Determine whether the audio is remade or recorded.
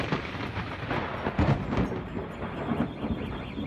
recorded